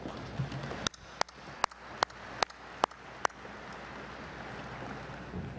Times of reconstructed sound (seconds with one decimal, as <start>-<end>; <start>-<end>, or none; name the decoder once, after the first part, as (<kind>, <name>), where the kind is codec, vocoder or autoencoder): none